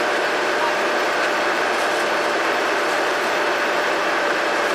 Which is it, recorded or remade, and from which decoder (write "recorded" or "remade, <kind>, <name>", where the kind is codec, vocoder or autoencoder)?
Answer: remade, vocoder, BigVGAN v2